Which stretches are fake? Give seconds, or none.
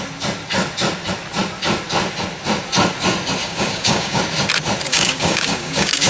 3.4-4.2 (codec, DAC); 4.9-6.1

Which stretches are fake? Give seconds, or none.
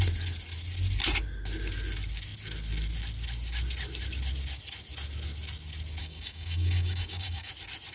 6.0-7.5 (codec, DAC)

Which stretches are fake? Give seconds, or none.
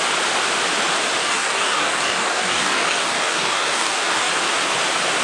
1.2-4.3 (codec, DAC)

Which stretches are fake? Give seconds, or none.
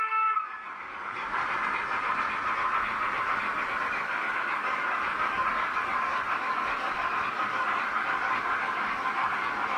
0.0-1.4 (codec, DAC); 3.8-9.8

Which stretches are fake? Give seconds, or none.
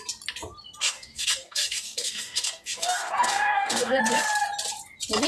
0.8-4.0 (codec, DAC)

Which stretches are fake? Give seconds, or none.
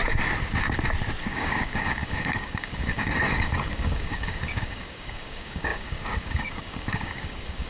1.2-7.7 (codec, DAC)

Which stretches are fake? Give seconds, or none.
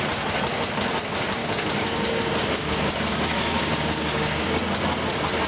1.4-4.5 (codec, DAC)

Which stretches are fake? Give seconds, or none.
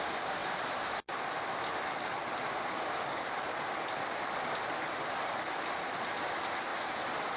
none